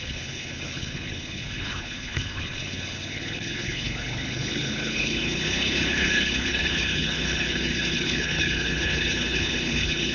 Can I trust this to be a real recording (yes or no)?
no